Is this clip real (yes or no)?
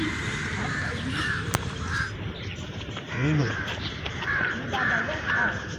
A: no